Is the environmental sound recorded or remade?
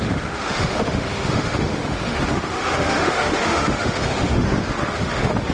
remade